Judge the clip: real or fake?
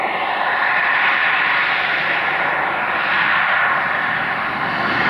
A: real